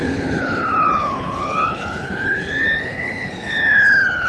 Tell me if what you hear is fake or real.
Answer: fake